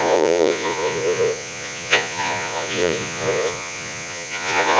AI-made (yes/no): yes